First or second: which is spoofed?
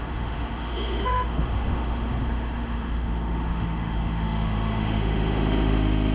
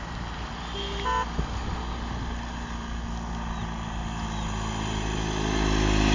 first